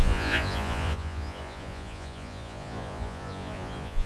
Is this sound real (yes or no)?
no